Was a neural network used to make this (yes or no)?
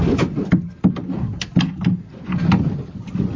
no